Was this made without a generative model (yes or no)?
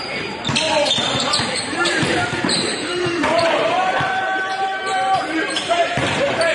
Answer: no